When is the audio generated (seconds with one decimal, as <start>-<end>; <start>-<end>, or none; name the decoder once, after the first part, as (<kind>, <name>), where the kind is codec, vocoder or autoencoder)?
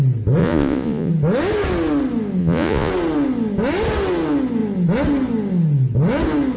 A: 0.4-1.1 (vocoder, Vocos); 2.4-2.9